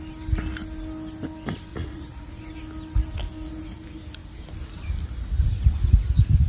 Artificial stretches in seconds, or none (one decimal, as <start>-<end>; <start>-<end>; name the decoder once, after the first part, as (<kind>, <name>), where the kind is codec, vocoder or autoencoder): 1.7-2.4 (vocoder, Vocos)